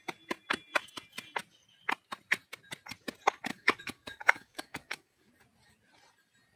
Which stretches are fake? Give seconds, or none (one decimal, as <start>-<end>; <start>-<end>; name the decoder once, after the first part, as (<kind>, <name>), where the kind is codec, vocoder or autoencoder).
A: 3.5-5.3 (codec, DAC)